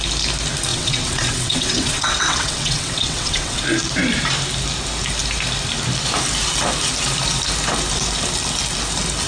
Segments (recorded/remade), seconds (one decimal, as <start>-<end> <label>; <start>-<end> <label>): 0.0-0.7 recorded; 0.7-3.6 remade; 3.6-9.3 recorded